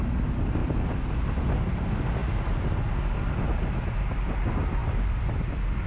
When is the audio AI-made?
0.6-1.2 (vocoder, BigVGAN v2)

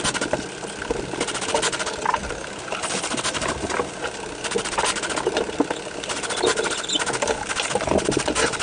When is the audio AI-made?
none